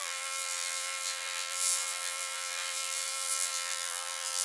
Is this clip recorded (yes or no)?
no